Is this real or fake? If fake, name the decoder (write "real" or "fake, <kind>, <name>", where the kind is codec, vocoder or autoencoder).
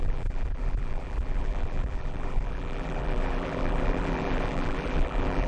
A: fake, vocoder, BigVGAN v2